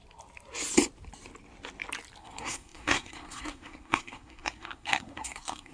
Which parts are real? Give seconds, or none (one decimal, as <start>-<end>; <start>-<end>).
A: 0.0-2.2